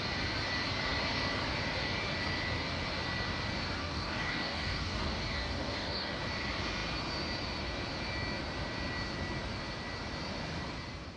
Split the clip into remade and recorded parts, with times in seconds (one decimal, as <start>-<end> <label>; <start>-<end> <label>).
0.0-3.8 recorded; 3.8-6.2 remade; 6.2-11.2 recorded